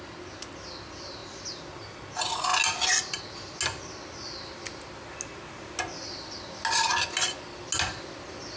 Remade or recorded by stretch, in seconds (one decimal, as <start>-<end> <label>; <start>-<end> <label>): 0.0-8.6 recorded